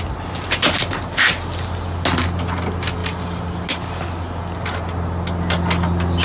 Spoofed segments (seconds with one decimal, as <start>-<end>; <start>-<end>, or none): none